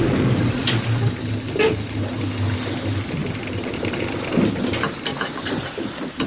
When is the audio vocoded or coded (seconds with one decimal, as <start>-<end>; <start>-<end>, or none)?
0.0-0.6; 3.2-4.0; 5.1-5.7